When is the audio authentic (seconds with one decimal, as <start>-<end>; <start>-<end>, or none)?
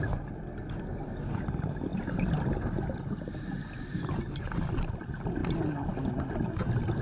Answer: 0.0-7.0